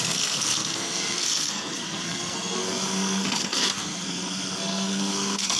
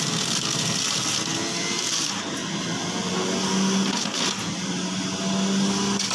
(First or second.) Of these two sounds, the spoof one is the first